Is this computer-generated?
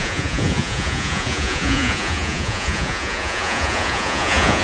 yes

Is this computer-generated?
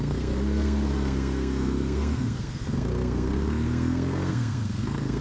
yes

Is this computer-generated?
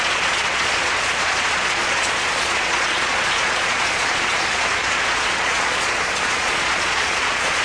yes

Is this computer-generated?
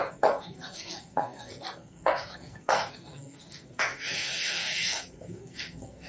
yes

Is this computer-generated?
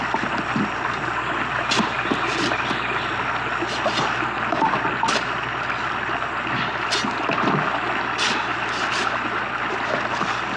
no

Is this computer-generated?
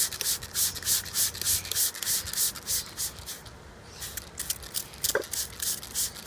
no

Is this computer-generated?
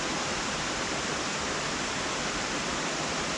no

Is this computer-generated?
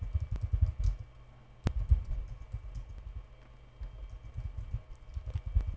no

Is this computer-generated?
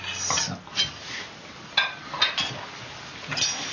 no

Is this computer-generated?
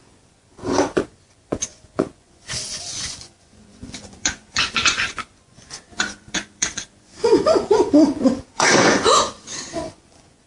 yes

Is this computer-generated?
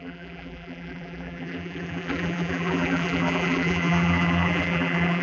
yes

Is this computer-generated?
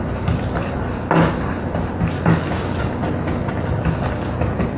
no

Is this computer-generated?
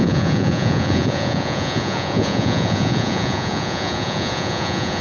yes